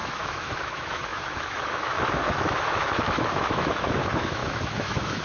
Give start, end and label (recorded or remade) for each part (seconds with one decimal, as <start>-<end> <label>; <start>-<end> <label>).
0.0-5.2 remade